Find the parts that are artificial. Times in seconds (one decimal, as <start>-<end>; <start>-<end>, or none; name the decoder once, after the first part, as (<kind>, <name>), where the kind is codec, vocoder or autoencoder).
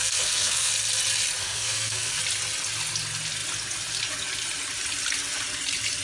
0.0-0.7 (codec, SNAC); 1.4-2.2